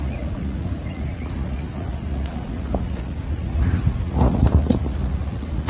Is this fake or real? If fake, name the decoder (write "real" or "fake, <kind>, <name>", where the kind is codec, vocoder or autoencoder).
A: fake, vocoder, Vocos